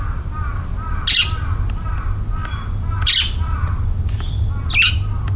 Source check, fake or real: real